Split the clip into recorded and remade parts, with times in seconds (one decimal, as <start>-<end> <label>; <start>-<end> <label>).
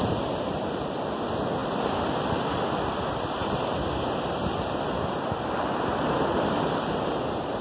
0.0-7.6 recorded